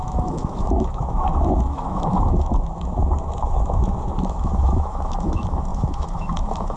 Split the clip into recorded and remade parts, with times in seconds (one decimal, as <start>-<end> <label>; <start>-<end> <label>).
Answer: 0.0-6.8 remade